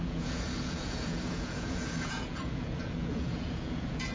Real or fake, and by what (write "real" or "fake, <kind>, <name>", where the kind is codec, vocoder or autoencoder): fake, vocoder, Vocos